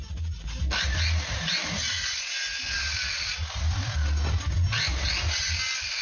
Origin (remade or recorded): recorded